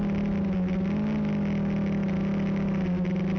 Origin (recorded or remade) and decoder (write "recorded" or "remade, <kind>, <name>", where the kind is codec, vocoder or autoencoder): recorded